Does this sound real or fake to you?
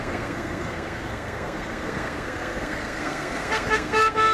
fake